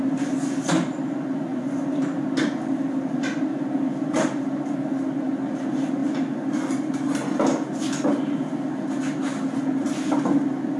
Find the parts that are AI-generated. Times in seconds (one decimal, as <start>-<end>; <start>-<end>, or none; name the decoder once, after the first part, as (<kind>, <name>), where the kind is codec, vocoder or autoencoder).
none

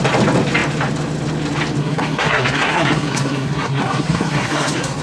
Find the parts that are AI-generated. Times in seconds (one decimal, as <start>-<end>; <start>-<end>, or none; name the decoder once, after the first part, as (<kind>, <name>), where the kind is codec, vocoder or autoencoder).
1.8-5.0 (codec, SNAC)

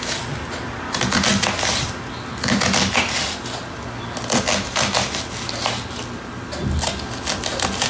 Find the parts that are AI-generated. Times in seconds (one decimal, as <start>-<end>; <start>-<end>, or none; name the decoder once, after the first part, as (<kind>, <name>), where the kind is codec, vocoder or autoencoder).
none

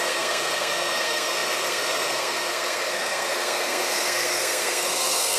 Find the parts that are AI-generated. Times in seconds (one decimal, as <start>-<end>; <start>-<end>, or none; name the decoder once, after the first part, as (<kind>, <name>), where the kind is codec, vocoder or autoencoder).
0.0-5.4 (codec, SNAC)